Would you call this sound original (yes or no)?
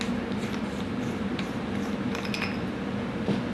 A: yes